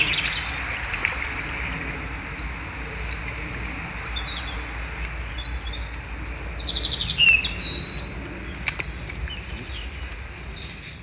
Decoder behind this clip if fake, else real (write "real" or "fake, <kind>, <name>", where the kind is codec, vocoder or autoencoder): real